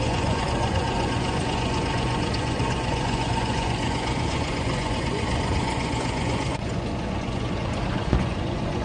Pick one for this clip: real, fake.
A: fake